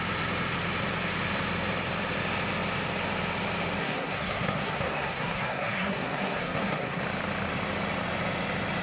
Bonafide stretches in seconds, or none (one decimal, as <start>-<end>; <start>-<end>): 0.0-3.8; 7.0-8.8